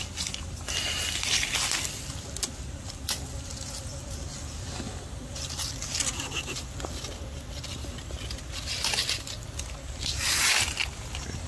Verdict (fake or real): real